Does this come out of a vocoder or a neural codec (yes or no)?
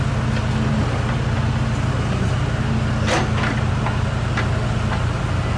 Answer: no